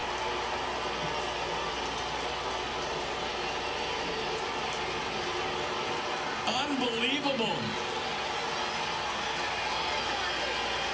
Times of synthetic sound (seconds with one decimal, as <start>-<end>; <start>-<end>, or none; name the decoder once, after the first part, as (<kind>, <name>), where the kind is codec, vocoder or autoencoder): none